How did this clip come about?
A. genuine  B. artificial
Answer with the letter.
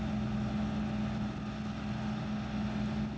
A